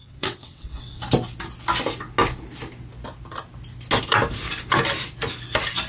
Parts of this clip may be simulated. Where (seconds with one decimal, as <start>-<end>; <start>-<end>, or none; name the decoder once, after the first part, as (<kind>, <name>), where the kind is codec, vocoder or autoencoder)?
0.0-1.0 (vocoder, WaveNeXt)